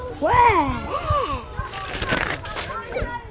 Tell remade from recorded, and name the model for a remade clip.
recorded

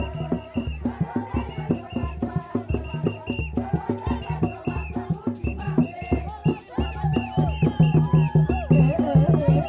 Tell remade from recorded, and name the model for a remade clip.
recorded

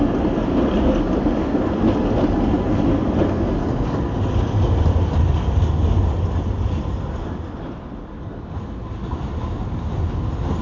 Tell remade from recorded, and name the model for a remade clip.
recorded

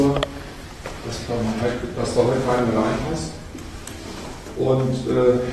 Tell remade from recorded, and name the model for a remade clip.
recorded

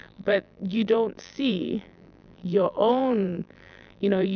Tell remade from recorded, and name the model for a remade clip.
remade, vocoder, BigVGAN v2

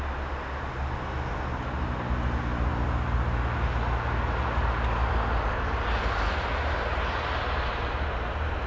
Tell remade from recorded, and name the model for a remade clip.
recorded